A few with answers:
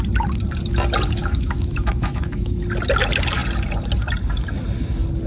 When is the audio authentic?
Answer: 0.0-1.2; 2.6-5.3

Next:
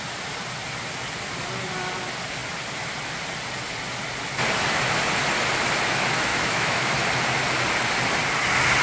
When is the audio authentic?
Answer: 0.0-6.3; 6.9-8.8